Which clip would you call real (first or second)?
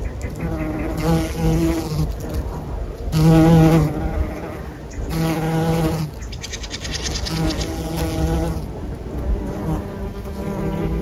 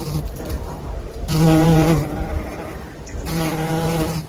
first